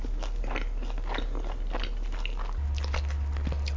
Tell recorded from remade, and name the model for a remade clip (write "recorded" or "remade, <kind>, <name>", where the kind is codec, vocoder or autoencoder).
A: recorded